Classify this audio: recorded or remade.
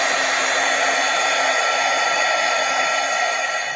remade